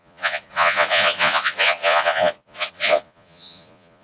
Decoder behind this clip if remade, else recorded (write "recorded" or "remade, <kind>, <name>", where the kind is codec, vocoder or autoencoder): remade, vocoder, Vocos